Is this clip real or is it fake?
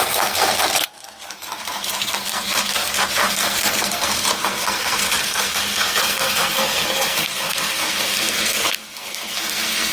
fake